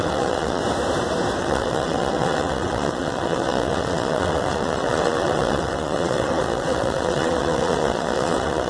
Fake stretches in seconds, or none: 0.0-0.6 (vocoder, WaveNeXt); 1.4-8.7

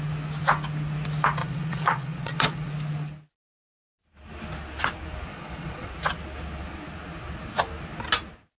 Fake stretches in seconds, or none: 1.4-2.7 (vocoder, Vocos); 5.3-5.9

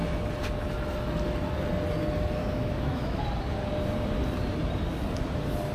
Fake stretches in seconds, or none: 2.4-3.2 (autoencoder, DAC-VAE)